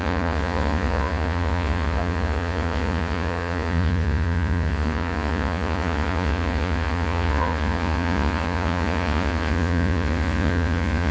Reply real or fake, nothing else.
fake